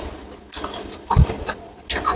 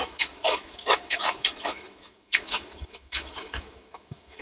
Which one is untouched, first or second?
first